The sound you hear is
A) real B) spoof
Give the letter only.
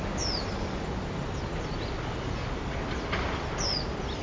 A